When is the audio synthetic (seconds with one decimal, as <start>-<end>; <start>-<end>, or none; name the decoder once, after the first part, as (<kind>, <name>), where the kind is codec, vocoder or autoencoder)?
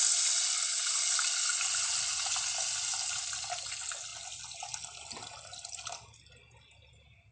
none